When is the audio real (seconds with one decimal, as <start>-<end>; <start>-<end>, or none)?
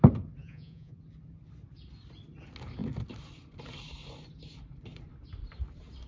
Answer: 0.0-0.4; 1.0-6.1